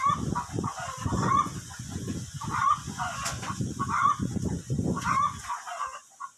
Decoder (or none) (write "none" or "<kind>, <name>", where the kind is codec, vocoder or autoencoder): vocoder, Vocos